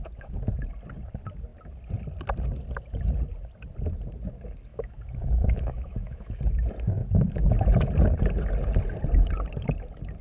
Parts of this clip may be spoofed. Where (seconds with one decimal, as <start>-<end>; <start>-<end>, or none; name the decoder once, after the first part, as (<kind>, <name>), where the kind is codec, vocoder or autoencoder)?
4.7-6.4 (autoencoder, DAC-VAE); 7.0-7.9